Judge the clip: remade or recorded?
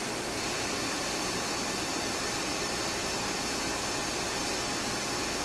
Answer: remade